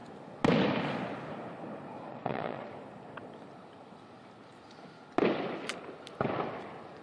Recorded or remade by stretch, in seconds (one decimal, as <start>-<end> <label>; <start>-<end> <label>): 0.0-2.1 recorded; 2.1-2.7 remade; 2.7-7.0 recorded